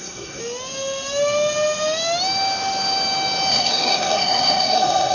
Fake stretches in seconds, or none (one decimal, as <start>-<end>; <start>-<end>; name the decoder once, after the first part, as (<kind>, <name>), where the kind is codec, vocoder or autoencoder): 0.0-0.4 (codec, SNAC); 3.5-5.1

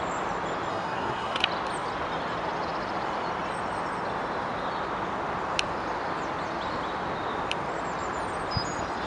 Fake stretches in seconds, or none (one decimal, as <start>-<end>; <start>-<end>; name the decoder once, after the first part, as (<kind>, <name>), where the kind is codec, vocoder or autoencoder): 0.7-1.4 (codec, SNAC)

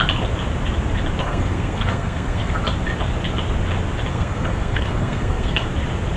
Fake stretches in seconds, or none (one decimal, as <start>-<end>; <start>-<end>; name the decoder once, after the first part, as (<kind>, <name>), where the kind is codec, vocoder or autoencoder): 1.2-2.6 (codec, SNAC); 4.1-5.7

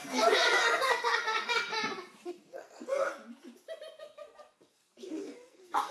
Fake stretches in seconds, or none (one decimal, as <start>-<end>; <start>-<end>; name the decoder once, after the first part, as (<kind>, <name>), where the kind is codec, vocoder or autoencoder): 0.0-1.7 (codec, SNAC); 2.3-3.1; 4.0-5.9